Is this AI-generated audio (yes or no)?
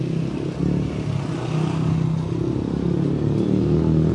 no